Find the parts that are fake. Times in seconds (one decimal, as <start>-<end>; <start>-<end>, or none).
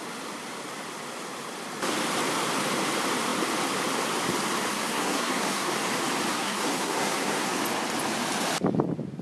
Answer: 4.7-5.7; 6.3-7.5